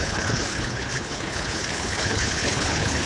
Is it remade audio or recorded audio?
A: remade